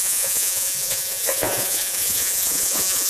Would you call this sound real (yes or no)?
no